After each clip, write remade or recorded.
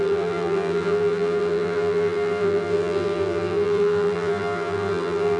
remade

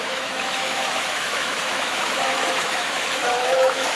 remade